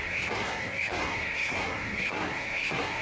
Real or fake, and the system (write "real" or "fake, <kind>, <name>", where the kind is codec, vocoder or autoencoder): fake, codec, SNAC